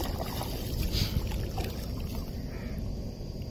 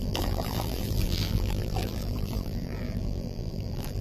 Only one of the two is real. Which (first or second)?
first